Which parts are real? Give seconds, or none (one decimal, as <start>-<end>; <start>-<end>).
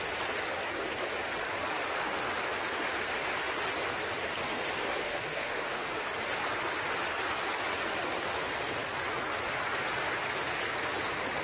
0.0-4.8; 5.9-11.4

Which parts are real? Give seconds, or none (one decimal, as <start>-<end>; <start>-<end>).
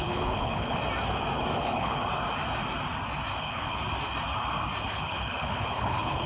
0.8-1.5; 2.0-3.4; 3.8-4.9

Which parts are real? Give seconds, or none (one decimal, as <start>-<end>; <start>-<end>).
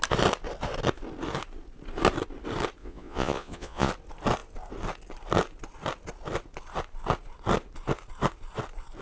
0.0-2.8; 3.9-9.0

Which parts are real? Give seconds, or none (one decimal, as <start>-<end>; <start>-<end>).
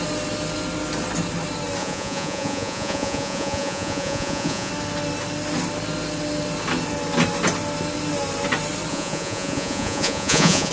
0.0-1.8; 4.7-8.9